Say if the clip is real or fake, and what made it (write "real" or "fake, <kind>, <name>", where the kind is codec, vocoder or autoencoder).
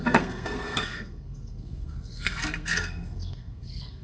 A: fake, codec, SNAC